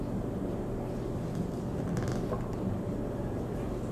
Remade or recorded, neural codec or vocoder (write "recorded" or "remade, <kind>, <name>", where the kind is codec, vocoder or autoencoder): recorded